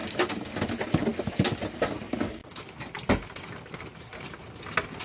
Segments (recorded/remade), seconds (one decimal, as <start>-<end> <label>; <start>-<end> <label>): 0.0-5.0 recorded